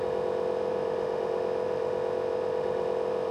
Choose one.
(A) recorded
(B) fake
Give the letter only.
B